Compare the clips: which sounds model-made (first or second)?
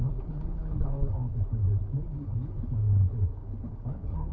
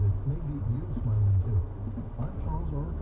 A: first